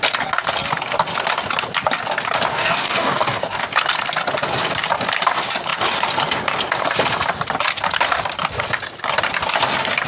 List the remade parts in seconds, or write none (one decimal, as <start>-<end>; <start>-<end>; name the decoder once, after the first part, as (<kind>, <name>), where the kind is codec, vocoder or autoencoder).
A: 2.5-3.6 (codec, DAC)